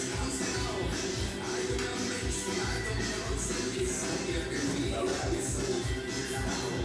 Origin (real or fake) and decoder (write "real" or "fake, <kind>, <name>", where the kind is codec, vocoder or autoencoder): real